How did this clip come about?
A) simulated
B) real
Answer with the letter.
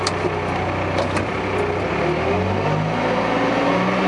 B